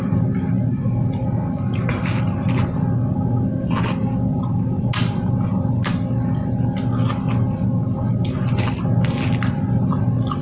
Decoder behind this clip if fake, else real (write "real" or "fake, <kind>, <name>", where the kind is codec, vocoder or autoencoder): real